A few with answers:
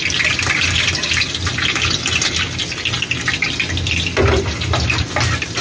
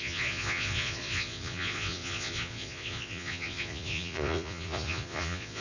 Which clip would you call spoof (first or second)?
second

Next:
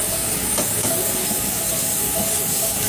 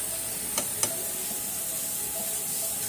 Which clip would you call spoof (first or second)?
first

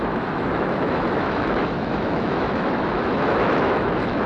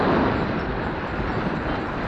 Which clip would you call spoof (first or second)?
first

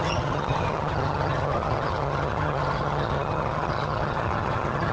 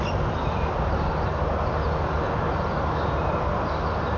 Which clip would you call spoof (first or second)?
first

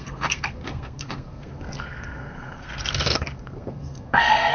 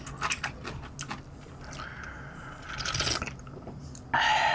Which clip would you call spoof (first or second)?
first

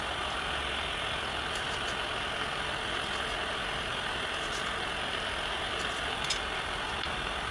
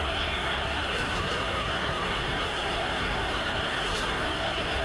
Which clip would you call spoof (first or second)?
second